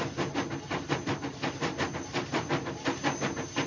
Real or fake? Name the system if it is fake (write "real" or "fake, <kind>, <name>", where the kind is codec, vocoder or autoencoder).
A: real